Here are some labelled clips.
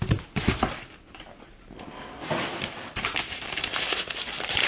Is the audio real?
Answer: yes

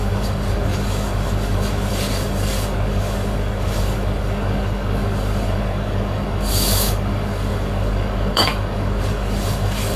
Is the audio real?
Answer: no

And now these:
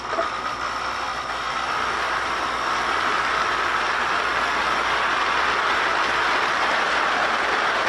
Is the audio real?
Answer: yes